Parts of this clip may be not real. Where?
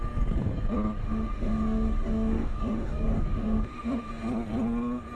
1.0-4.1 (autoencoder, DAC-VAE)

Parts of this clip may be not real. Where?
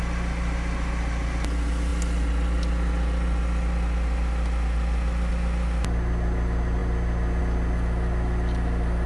none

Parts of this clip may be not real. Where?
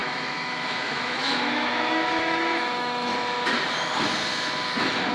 0.0-3.1 (autoencoder, DAC-VAE)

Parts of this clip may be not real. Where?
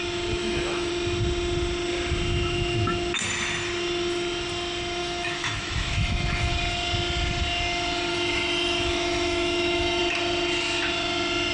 0.4-0.9 (autoencoder, DAC-VAE); 5.0-6.5; 8.1-10.0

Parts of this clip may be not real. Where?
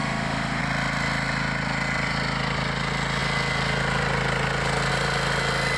0.0-0.6 (autoencoder, DAC-VAE)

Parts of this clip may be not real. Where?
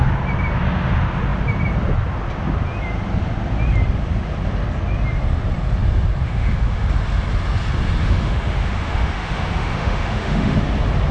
6.2-6.9 (autoencoder, DAC-VAE); 8.0-10.6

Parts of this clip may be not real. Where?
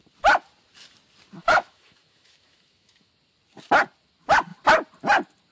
1.4-3.1 (autoencoder, DAC-VAE)